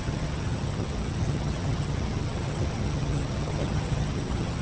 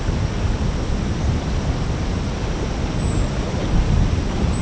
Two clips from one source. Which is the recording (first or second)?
second